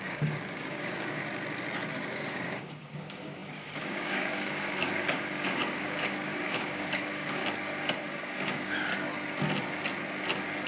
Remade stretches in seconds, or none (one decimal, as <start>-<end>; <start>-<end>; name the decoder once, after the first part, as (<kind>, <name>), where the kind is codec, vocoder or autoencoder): 0.0-1.2 (codec, DAC); 1.9-7.4; 8.0-8.9